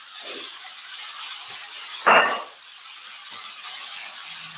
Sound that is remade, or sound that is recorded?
recorded